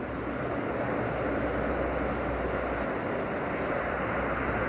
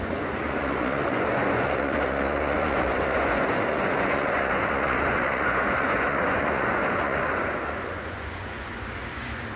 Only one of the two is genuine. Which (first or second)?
first